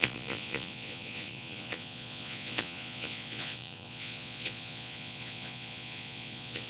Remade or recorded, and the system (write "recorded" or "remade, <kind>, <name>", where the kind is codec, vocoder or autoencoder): remade, vocoder, Vocos